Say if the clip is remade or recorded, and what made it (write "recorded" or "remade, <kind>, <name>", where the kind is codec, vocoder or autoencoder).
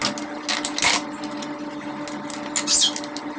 recorded